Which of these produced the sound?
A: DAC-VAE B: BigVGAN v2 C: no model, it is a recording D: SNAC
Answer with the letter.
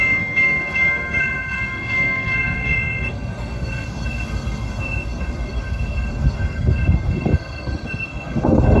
D